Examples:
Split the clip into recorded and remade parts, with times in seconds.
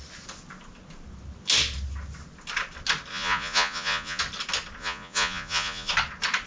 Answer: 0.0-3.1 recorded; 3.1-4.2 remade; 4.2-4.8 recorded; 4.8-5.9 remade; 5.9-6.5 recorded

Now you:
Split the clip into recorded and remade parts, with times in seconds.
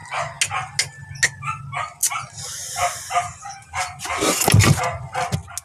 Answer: 0.0-5.6 recorded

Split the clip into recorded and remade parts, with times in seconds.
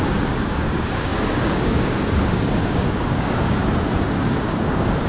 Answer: 0.0-3.6 remade; 3.6-4.2 recorded; 4.2-5.1 remade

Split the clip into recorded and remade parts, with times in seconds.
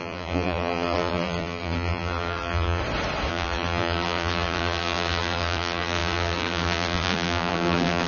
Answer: 0.0-2.8 remade; 2.8-3.3 recorded; 3.3-8.1 remade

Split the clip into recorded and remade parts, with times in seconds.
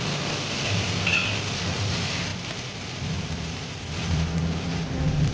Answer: 0.0-4.4 remade; 4.4-5.3 recorded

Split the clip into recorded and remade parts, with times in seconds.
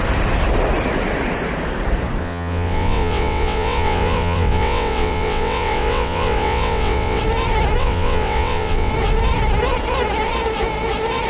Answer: 0.0-2.2 recorded; 2.2-7.2 remade; 7.2-7.8 recorded; 7.8-8.9 remade; 8.9-11.3 recorded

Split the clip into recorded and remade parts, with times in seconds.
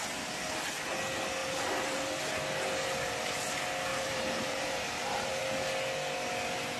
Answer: 0.0-1.4 recorded; 1.4-2.2 remade; 2.2-3.9 recorded; 3.9-5.4 remade; 5.4-6.8 recorded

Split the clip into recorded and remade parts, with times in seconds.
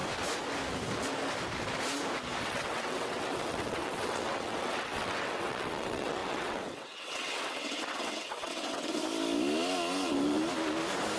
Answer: 0.0-2.4 recorded; 2.4-9.0 remade; 9.0-11.2 recorded